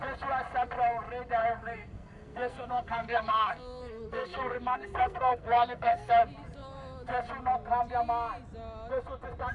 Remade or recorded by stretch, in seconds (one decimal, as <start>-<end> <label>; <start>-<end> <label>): 0.0-1.4 recorded; 1.4-6.1 remade; 6.1-9.5 recorded